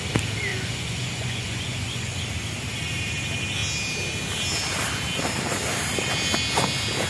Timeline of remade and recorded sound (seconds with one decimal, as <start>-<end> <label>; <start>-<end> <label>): 0.0-0.5 recorded; 0.5-2.2 remade; 2.2-7.1 recorded